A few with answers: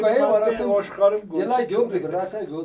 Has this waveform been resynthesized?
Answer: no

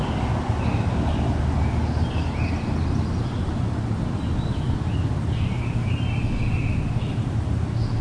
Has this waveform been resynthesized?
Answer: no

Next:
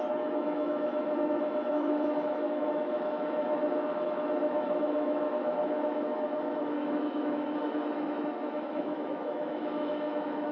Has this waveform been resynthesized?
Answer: yes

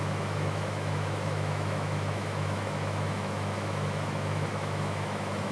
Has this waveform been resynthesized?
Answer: yes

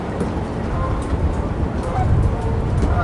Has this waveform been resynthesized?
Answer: no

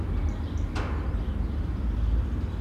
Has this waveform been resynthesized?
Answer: no